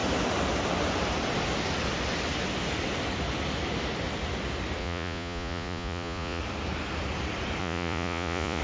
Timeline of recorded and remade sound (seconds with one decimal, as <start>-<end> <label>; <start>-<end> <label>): 0.0-4.8 recorded; 4.8-6.4 remade; 6.4-7.6 recorded; 7.6-8.6 remade